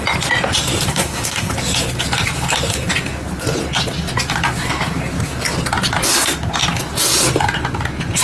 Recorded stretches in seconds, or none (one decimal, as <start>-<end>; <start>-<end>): 0.0-0.9; 1.5-8.2